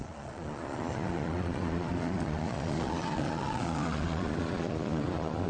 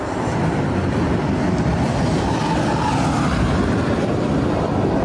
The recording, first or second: second